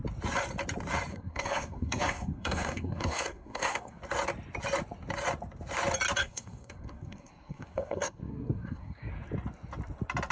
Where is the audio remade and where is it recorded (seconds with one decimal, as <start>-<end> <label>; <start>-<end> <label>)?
0.0-1.1 recorded; 1.1-4.0 remade; 4.0-6.2 recorded; 6.2-9.1 remade; 9.1-10.3 recorded